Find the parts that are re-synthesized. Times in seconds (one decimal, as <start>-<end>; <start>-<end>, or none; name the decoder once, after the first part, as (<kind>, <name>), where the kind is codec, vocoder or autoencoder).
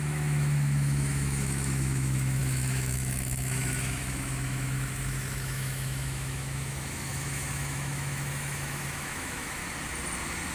0.0-9.6 (autoencoder, DAC-VAE)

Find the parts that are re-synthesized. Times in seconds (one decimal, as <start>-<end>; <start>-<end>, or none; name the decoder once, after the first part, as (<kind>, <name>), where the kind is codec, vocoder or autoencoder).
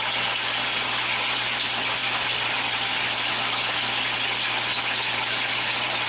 none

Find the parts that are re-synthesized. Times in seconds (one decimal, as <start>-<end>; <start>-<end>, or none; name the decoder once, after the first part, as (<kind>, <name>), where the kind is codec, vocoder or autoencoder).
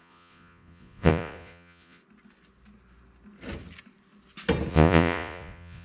0.0-2.0 (vocoder, Vocos); 4.7-5.8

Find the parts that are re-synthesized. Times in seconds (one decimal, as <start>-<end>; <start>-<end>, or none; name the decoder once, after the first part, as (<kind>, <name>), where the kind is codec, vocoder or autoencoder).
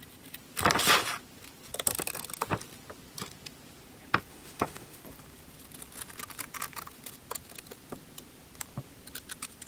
4.3-5.0 (autoencoder, DAC-VAE)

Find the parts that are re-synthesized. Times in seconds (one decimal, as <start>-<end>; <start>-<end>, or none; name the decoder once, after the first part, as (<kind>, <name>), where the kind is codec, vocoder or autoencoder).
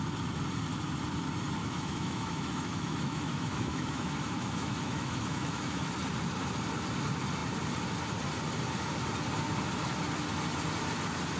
1.6-5.9 (autoencoder, DAC-VAE)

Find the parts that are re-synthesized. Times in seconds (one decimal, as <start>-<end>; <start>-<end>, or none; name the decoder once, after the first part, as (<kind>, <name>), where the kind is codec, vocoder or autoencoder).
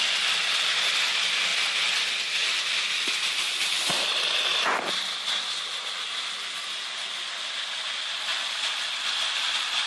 none